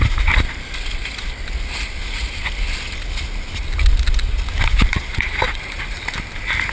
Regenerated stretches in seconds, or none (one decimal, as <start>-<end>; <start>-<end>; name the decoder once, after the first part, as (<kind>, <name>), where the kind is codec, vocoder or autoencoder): 4.9-5.6 (vocoder, Vocos)